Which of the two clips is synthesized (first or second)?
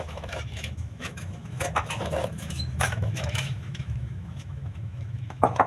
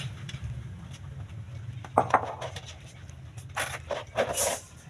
first